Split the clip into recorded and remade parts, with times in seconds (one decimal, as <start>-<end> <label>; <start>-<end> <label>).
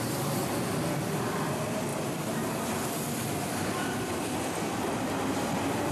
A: 0.0-5.9 recorded